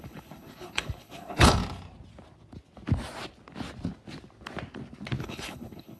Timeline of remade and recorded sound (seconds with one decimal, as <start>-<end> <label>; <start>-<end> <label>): 0.0-1.6 remade; 1.6-5.2 recorded; 5.2-6.0 remade